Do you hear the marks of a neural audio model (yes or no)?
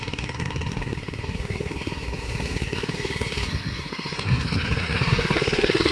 yes